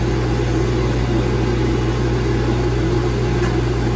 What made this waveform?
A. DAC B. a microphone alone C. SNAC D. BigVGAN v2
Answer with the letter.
B